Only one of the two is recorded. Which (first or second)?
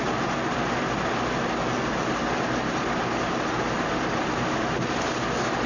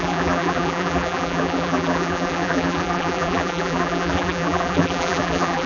first